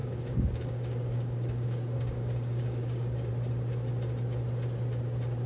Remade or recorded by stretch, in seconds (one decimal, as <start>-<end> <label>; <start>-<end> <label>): 0.0-3.3 remade; 3.3-5.5 recorded